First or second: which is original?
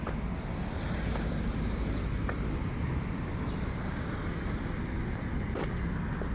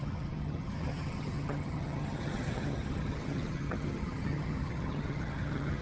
first